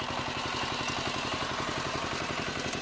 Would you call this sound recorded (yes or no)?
yes